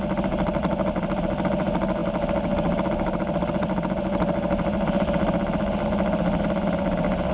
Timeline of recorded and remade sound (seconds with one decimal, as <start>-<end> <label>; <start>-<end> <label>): 0.0-7.3 recorded